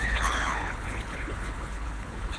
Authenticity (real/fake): fake